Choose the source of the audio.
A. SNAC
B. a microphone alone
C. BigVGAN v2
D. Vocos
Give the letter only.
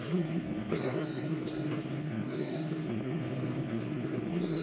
A